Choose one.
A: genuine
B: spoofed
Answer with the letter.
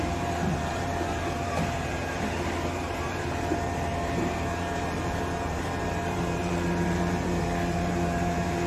B